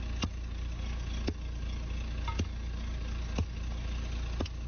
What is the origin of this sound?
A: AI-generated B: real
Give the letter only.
B